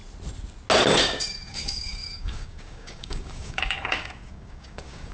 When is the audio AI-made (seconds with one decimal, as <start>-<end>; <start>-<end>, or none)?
1.0-5.1